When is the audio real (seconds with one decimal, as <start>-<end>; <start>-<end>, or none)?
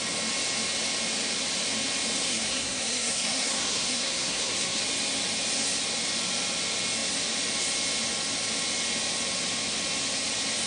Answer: 0.0-2.2; 4.8-10.7